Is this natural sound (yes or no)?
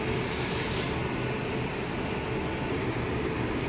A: yes